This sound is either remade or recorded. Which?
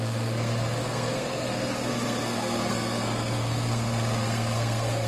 remade